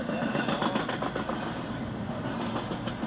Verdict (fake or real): real